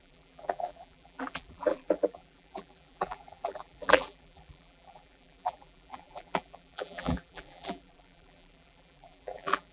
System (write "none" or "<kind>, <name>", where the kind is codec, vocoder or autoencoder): vocoder, BigVGAN v2